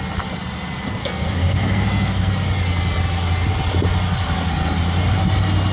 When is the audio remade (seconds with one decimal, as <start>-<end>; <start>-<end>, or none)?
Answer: 1.0-2.3

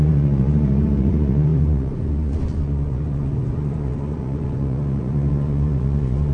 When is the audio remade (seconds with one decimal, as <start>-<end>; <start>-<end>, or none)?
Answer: 0.0-6.3

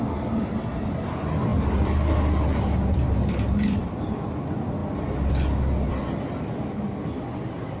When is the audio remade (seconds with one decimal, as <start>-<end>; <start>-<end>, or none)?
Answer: none